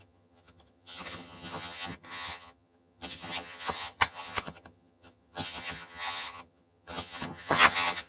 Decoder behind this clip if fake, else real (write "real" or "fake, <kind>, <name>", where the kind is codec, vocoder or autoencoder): fake, vocoder, HiFi-GAN